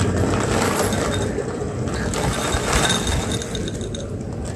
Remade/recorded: recorded